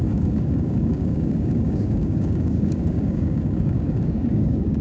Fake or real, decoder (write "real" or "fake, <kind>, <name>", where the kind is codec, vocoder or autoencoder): fake, codec, DAC